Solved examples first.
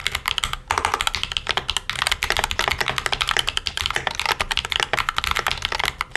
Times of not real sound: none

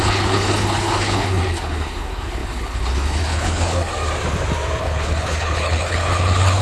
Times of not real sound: 0.0-3.9 (codec, HILCodec); 4.8-6.6

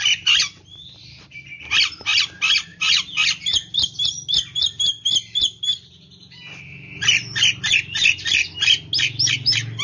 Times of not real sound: 2.7-3.2 (vocoder, BigVGAN v2)

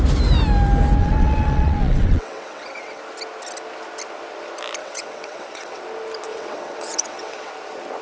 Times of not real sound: 1.0-3.0 (vocoder, WaveNeXt); 4.8-5.8; 6.3-7.5

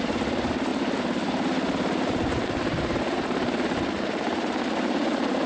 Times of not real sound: none

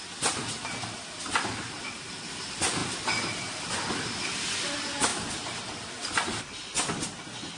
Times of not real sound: none